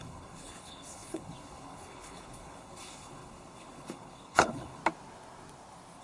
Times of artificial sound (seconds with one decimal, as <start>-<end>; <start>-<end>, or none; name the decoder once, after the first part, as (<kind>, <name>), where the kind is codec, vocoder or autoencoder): 0.0-4.8 (codec, HILCodec)